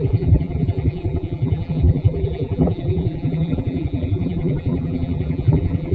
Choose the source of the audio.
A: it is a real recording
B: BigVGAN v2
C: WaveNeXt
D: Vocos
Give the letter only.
B